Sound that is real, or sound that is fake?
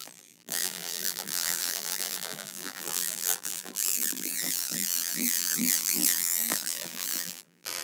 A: fake